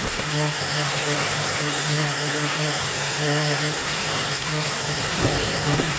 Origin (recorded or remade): remade